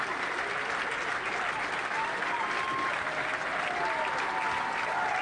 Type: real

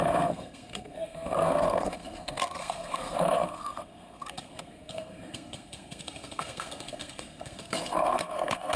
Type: fake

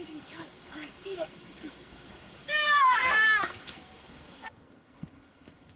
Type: fake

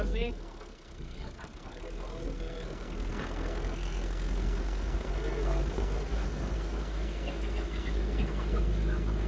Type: fake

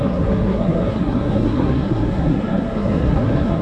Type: fake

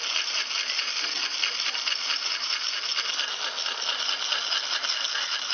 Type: real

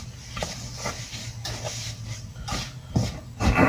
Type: real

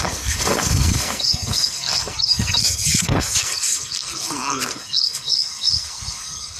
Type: fake